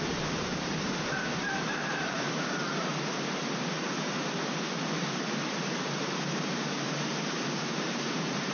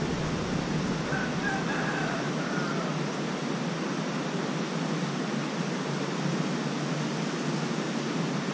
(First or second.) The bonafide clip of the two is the second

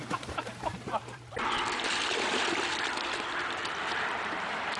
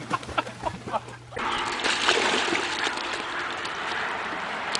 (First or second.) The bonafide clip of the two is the second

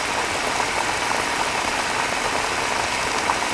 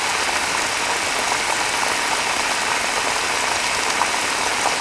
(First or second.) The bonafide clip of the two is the second